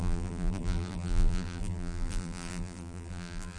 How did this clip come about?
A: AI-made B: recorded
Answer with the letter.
A